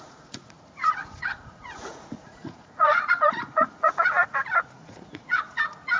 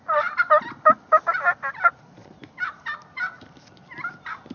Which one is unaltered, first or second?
second